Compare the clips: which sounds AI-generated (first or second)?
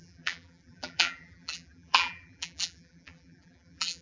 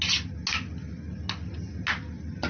first